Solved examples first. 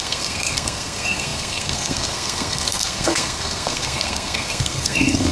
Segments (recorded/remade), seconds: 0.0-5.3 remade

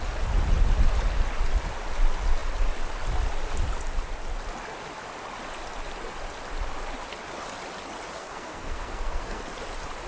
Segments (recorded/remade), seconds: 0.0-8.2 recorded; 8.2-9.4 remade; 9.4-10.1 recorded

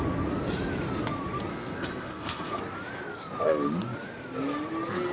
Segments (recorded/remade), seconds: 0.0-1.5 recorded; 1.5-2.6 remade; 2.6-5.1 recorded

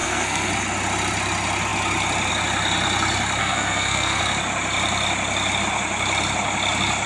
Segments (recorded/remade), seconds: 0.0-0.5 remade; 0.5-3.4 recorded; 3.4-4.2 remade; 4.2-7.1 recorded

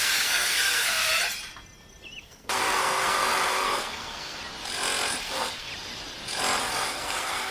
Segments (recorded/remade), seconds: 0.0-1.1 remade; 1.1-2.2 recorded; 2.2-4.4 remade; 4.4-5.2 recorded; 5.2-5.7 remade; 5.7-6.6 recorded; 6.6-7.5 remade

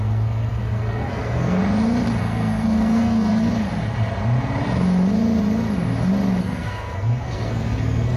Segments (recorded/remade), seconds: 0.0-1.6 remade; 1.6-2.2 recorded; 2.2-3.5 remade; 3.5-6.4 recorded; 6.4-8.2 remade